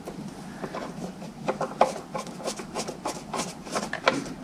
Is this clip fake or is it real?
real